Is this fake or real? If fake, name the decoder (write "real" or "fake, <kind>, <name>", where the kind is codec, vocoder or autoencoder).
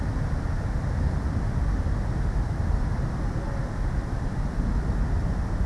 real